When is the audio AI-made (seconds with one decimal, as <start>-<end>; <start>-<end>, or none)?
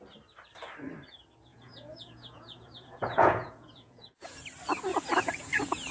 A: 1.5-4.4; 4.9-5.9